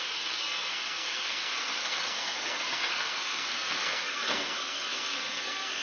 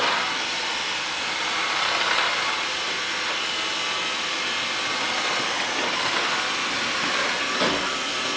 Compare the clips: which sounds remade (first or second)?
first